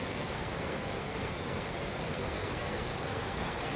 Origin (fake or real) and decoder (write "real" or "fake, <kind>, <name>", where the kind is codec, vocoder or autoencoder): fake, codec, SNAC